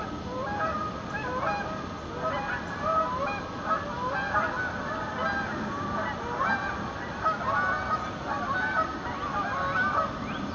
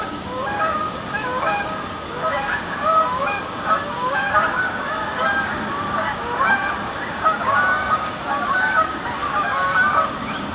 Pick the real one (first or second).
first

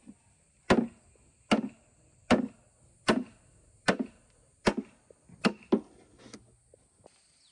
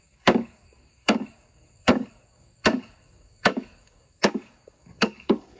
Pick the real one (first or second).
first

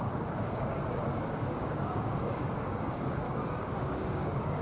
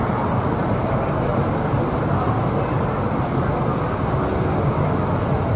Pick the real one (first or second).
second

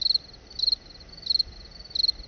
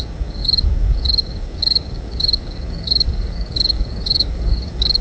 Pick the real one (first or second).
first